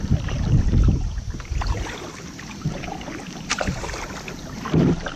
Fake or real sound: real